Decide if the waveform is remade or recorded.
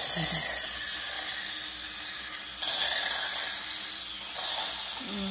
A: recorded